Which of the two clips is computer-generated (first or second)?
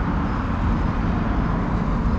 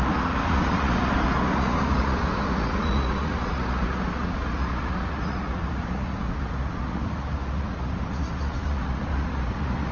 second